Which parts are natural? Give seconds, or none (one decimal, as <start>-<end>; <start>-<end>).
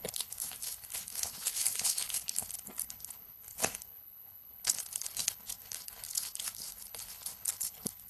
none